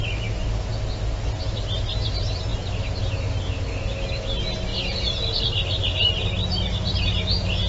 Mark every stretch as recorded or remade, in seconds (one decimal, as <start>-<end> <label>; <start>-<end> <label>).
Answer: 0.0-4.7 recorded; 4.7-5.4 remade; 5.4-7.7 recorded